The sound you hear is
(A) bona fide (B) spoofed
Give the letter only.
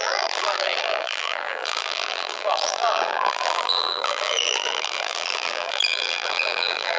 B